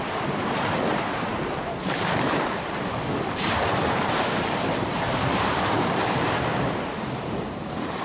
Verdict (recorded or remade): remade